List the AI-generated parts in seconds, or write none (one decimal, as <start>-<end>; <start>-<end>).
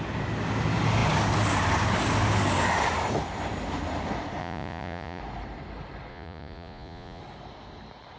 4.4-5.2; 6.1-7.2